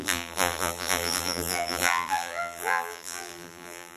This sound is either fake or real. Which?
fake